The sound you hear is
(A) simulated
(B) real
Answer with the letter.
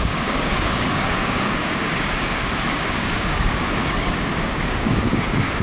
A